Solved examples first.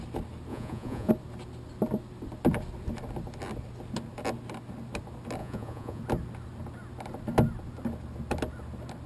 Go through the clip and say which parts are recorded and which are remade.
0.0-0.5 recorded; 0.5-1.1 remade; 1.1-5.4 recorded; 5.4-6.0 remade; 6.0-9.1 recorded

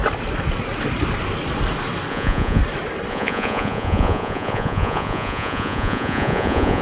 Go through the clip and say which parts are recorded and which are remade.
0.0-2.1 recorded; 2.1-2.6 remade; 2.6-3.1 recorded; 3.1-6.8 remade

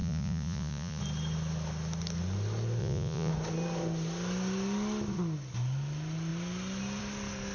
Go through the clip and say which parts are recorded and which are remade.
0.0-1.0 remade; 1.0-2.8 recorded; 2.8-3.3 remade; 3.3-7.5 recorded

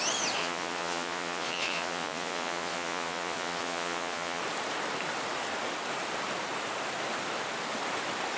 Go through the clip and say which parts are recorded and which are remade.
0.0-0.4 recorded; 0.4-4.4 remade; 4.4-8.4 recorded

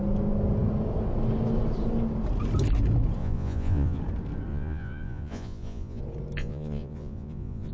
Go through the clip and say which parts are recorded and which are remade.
0.0-3.2 recorded; 3.2-4.0 remade; 4.0-4.5 recorded; 4.5-6.0 remade; 6.0-6.4 recorded; 6.4-7.7 remade

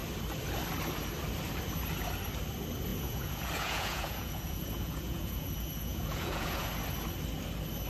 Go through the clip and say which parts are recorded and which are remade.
0.0-2.9 recorded; 2.9-6.6 remade; 6.6-7.9 recorded

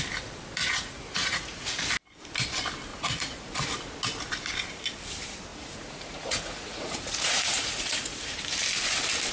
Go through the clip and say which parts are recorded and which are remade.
0.0-0.6 recorded; 0.6-1.8 remade; 1.8-2.9 recorded; 2.9-3.5 remade; 3.5-5.5 recorded; 5.5-8.4 remade; 8.4-9.3 recorded